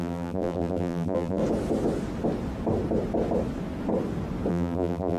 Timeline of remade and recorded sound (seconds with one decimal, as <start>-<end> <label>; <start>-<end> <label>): 0.0-1.4 remade; 1.4-4.5 recorded; 4.5-5.2 remade